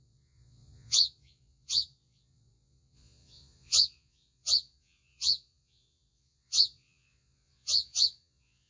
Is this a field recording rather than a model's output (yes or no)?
no